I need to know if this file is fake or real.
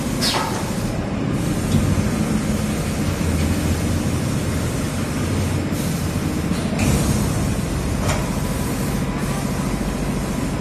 real